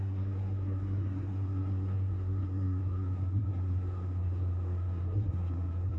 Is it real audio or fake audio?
fake